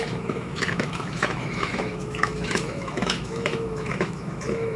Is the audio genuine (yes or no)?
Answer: no